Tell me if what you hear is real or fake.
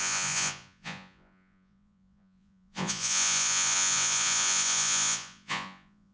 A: fake